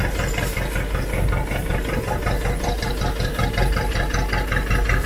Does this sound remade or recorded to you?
recorded